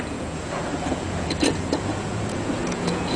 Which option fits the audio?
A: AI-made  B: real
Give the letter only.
A